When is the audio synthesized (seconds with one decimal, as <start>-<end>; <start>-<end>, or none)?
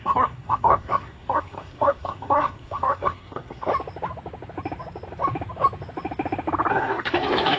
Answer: 0.0-3.7; 6.7-7.6